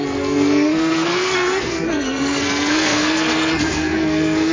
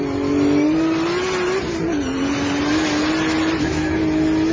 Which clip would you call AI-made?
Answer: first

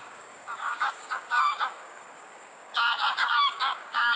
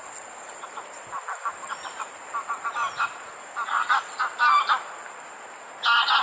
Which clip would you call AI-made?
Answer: first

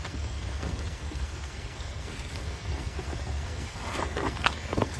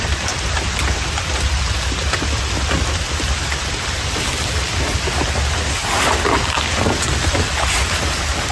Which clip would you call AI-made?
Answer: first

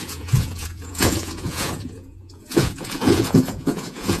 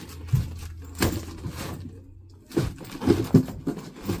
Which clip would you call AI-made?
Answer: first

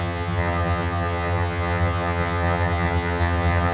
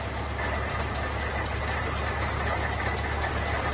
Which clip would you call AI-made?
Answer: first